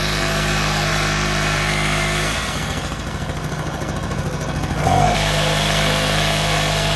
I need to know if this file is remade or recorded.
remade